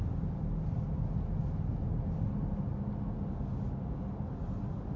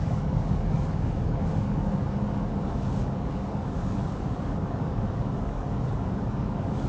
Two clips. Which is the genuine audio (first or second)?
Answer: first